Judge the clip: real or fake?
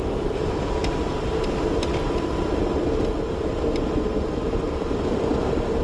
real